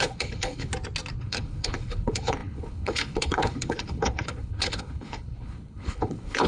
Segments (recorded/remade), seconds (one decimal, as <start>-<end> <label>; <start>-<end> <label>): 0.0-0.7 remade; 0.7-1.2 recorded; 1.2-6.5 remade